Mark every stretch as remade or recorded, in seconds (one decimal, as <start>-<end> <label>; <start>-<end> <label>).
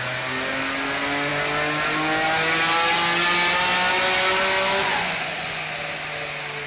0.0-4.8 recorded; 4.8-5.7 remade; 5.7-6.7 recorded